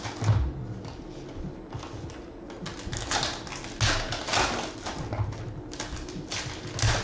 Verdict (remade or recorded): recorded